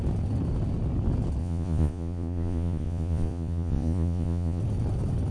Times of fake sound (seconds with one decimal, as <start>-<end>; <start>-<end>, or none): 1.4-4.6